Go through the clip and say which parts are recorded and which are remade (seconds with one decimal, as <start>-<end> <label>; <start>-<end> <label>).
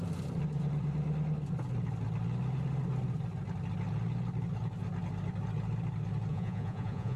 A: 0.0-6.3 recorded; 6.3-7.2 remade